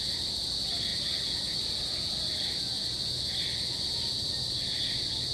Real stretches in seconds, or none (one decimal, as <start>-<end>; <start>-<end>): 0.0-5.3